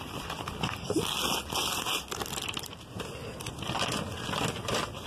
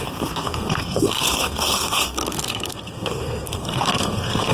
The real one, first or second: first